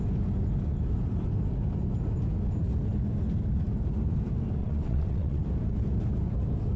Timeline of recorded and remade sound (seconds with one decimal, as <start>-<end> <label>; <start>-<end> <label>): 0.0-4.6 recorded; 4.6-5.4 remade; 5.4-6.8 recorded